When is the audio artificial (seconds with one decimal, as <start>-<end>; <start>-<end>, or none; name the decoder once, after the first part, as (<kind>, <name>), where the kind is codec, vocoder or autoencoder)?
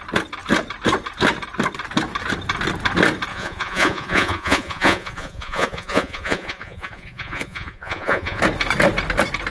3.3-8.4 (vocoder, Vocos)